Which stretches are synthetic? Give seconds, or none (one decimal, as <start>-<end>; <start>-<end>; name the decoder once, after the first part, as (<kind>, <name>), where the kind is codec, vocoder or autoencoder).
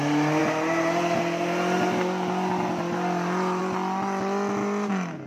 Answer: none